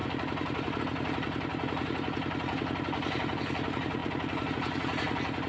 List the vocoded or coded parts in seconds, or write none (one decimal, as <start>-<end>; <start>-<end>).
none